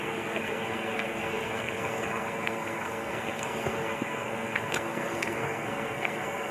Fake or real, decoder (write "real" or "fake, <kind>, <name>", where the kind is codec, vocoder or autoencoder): fake, codec, SNAC